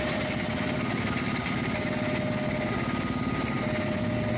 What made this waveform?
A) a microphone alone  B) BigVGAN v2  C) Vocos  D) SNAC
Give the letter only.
A